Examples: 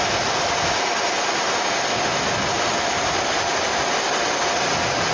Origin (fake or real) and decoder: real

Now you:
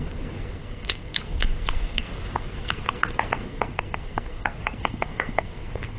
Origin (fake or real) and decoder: fake, codec, SNAC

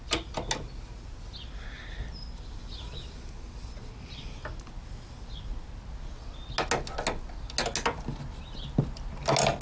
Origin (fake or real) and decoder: real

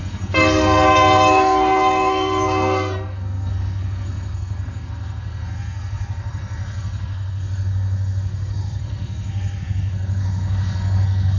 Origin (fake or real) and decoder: fake, codec, SNAC